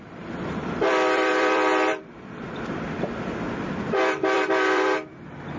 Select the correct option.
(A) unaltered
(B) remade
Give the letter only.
B